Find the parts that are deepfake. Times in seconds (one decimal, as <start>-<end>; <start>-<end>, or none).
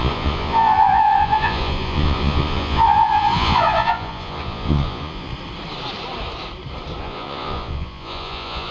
0.0-5.3; 7.0-8.7